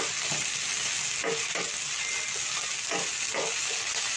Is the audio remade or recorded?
recorded